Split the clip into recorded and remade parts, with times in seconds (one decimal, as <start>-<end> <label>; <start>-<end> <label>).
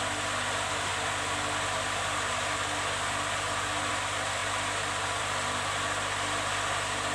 0.0-7.1 recorded